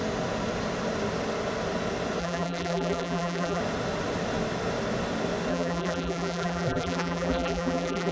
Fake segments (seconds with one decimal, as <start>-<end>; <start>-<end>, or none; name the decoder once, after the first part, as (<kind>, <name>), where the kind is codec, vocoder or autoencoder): 2.2-3.6 (vocoder, BigVGAN v2); 5.5-8.1